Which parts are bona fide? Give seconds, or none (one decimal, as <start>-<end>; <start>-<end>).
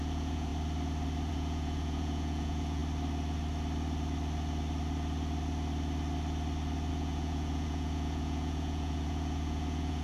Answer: 0.5-1.3; 2.8-6.9